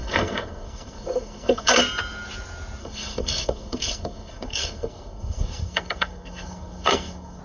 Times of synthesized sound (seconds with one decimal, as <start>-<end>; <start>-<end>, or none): 0.0-1.8; 2.8-7.4